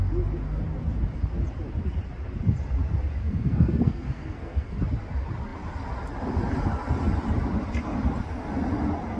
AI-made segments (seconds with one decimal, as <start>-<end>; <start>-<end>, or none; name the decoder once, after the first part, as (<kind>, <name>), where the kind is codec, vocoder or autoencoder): 3.2-4.8 (codec, SNAC)